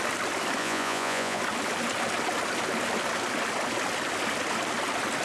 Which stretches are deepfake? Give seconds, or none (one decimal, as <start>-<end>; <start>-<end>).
0.6-1.4